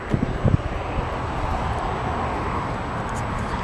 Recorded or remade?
recorded